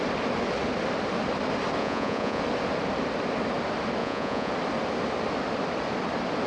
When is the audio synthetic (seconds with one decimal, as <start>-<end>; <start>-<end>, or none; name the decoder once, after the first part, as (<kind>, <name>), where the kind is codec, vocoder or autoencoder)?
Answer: 1.8-2.4 (vocoder, Vocos); 4.0-4.5